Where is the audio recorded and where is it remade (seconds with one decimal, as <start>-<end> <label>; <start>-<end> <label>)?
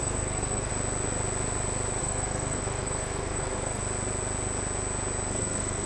0.0-0.7 remade; 0.7-2.0 recorded; 2.0-3.8 remade; 3.8-5.3 recorded; 5.3-5.9 remade